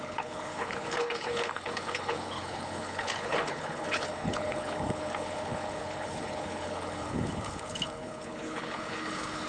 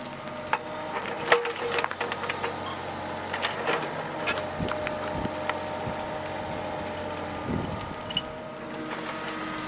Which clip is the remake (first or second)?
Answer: first